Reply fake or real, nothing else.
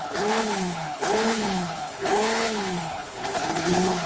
fake